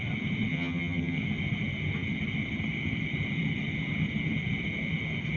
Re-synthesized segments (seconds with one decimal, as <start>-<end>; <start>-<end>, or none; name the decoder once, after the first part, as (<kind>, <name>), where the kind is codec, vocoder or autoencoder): 0.5-1.2 (vocoder, HiFi-GAN)